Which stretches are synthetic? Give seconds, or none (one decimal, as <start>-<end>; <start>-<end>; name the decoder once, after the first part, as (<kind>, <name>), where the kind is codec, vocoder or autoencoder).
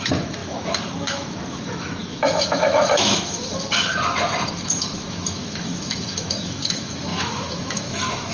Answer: 0.0-3.9 (autoencoder, DAC-VAE); 4.5-8.3